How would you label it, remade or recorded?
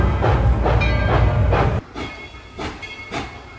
recorded